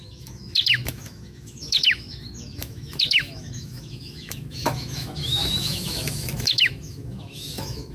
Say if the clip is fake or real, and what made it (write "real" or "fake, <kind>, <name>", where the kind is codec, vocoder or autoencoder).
fake, autoencoder, DAC-VAE